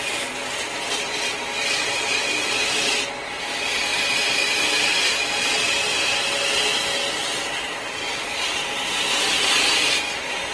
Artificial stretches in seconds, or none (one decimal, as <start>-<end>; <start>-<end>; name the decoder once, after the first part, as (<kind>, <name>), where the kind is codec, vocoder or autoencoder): none